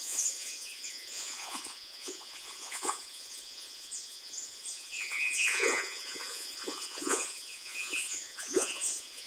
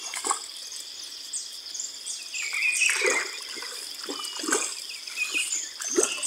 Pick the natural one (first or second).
second